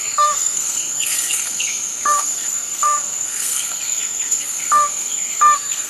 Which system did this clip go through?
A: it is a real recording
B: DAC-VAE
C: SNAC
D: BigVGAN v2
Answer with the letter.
C